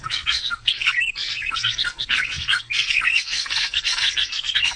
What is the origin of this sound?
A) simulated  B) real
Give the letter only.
A